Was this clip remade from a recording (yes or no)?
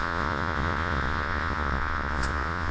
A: yes